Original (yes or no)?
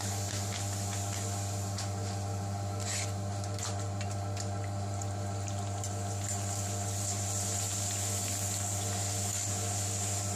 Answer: yes